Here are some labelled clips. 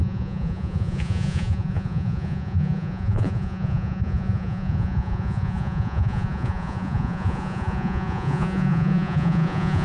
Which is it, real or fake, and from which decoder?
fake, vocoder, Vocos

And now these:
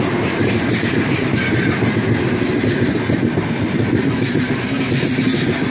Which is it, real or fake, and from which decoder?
real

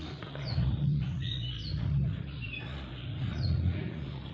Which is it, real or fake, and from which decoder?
fake, vocoder, Vocos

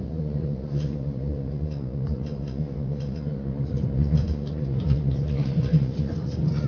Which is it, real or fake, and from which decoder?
fake, vocoder, Vocos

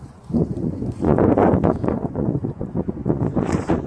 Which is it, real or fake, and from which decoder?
fake, vocoder, Vocos